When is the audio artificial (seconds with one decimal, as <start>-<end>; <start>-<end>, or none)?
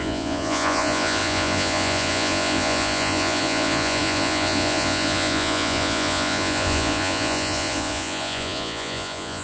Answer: 0.0-9.4